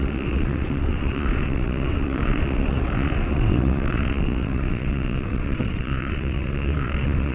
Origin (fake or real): fake